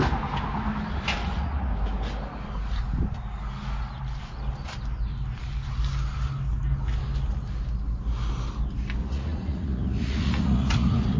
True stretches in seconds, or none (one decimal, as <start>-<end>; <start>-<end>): 0.0-1.2; 1.7-9.0